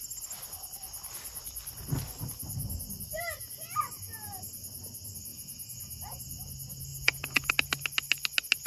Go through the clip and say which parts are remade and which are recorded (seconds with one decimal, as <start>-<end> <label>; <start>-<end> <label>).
0.0-5.3 recorded; 5.3-6.2 remade; 6.2-6.9 recorded; 6.9-7.5 remade; 7.5-8.7 recorded